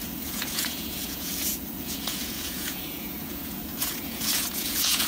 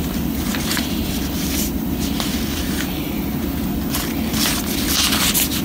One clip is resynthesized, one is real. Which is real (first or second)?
second